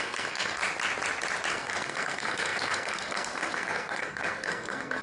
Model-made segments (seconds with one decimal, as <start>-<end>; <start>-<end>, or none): 0.0-0.6; 1.5-5.0